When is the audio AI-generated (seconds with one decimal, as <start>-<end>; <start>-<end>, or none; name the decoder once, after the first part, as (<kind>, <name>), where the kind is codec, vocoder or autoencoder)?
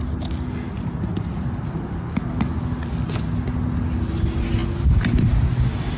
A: none